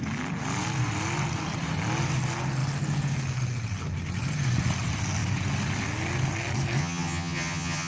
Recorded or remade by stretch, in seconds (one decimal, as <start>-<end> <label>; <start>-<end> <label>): 0.0-6.8 recorded; 6.8-7.9 remade